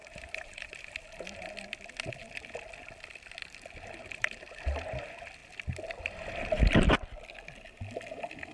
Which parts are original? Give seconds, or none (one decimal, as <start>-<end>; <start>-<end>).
0.9-8.5